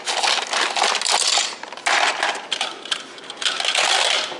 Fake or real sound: real